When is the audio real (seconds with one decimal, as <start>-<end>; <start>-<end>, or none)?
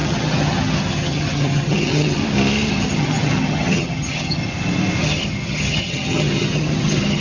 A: 2.2-2.7; 4.4-5.0